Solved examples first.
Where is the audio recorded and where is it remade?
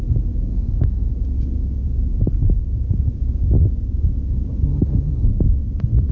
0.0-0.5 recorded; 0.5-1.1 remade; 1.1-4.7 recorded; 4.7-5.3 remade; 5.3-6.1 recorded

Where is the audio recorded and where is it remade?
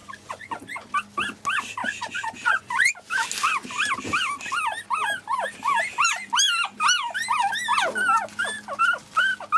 0.0-0.9 remade; 0.9-1.8 recorded; 1.8-2.9 remade; 2.9-9.6 recorded